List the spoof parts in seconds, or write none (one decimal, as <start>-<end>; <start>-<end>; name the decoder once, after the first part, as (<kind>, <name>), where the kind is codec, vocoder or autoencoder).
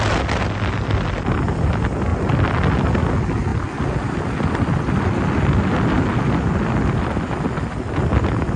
none